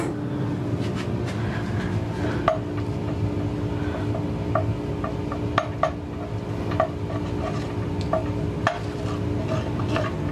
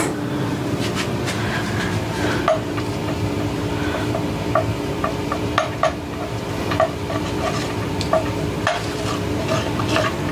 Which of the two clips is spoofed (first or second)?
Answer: second